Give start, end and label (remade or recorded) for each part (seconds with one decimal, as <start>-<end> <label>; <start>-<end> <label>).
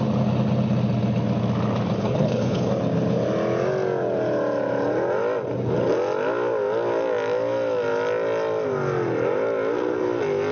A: 0.0-2.0 recorded; 2.0-2.7 remade; 2.7-10.5 recorded